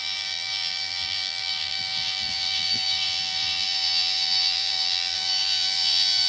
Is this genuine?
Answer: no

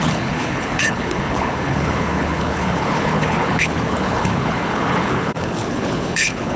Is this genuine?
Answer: no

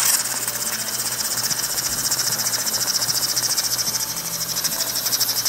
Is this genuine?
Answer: yes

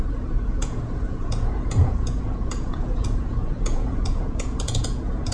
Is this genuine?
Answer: no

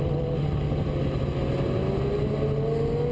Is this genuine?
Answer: yes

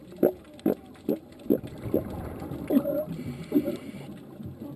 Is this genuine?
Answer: yes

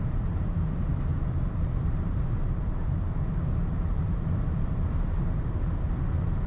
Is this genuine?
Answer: no